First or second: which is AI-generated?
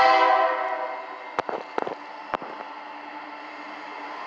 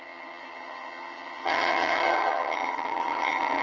second